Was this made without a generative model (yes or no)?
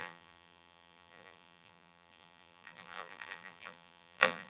no